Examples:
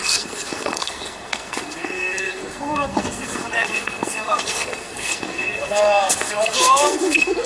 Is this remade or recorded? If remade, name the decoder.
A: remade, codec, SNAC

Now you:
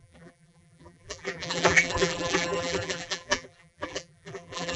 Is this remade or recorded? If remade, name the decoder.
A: remade, vocoder, BigVGAN v2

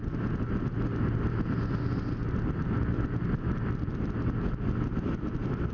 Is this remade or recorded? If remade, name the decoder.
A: recorded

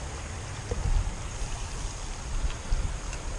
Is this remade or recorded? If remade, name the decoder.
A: recorded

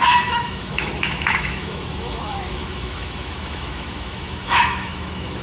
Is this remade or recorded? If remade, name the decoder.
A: remade, autoencoder, DAC-VAE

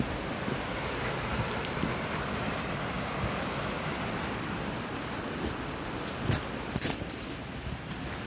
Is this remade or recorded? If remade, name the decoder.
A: recorded